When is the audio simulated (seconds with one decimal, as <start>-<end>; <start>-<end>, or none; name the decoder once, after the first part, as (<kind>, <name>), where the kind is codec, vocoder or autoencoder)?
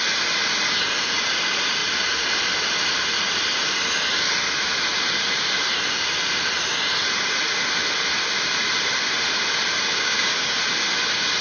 9.9-10.6 (codec, DAC)